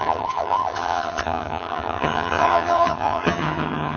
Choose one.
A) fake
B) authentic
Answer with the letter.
A